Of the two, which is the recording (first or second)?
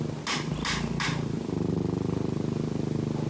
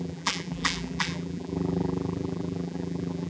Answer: first